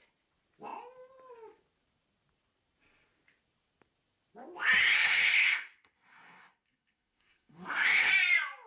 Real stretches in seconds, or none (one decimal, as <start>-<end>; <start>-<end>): 0.0-4.8; 8.1-8.7